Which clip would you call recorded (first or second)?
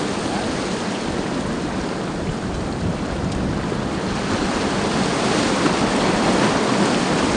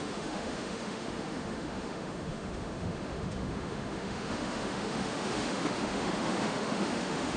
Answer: first